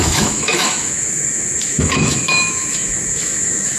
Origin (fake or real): fake